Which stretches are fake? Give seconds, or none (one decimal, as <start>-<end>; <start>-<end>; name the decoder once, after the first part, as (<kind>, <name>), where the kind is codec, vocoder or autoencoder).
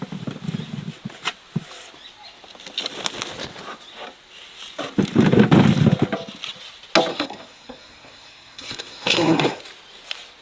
7.1-9.6 (codec, SNAC)